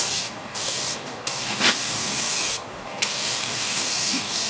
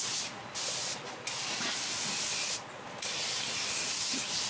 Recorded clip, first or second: second